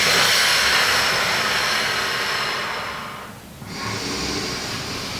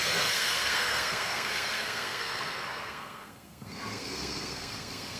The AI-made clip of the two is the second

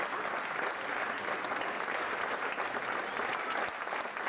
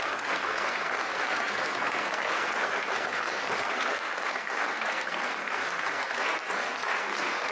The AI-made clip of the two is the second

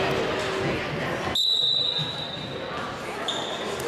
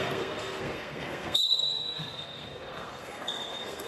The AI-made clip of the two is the second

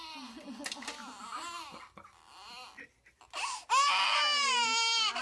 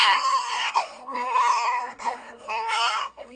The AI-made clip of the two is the second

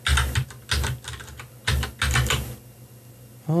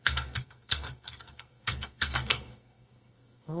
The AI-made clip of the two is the second